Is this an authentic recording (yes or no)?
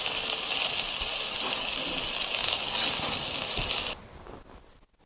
yes